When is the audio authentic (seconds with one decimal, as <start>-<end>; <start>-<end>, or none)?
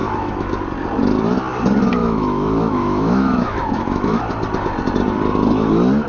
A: 0.6-2.0; 4.2-6.1